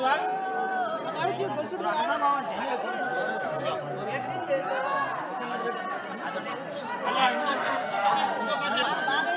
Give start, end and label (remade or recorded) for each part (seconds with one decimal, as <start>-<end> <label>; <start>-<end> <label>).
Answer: 0.0-7.2 recorded; 7.2-8.1 remade; 8.1-9.4 recorded